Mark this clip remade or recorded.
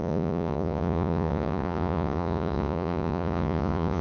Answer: remade